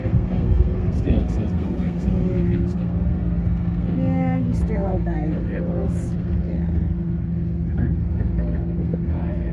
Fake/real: fake